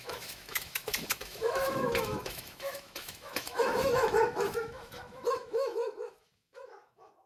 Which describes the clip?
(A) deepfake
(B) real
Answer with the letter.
A